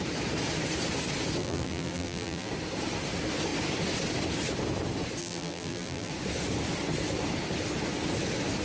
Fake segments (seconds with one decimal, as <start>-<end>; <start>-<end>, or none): 1.4-2.5; 5.2-6.1